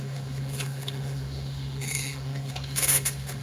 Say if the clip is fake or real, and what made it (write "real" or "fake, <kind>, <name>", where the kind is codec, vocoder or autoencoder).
fake, autoencoder, DAC-VAE